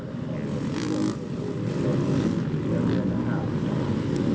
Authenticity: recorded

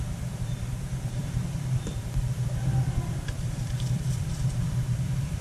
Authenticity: remade